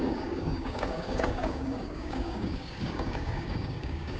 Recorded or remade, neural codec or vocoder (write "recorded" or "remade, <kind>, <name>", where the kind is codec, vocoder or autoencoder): remade, codec, DAC